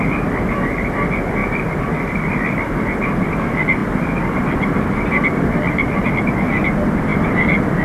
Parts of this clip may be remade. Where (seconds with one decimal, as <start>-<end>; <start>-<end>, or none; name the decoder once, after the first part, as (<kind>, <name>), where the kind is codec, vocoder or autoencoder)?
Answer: 1.4-3.3 (vocoder, BigVGAN v2); 3.8-5.5; 7.1-7.8